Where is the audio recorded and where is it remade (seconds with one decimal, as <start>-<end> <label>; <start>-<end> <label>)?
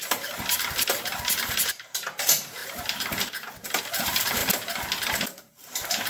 0.0-2.6 remade; 2.6-3.8 recorded; 3.8-4.4 remade; 4.4-6.1 recorded